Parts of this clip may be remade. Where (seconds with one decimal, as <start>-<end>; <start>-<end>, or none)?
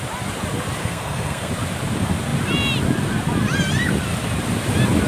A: 0.8-1.5